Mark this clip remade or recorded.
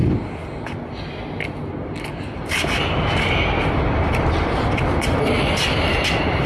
recorded